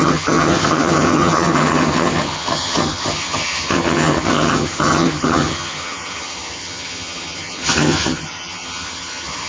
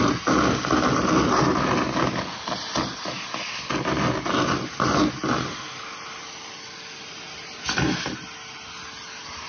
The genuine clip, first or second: second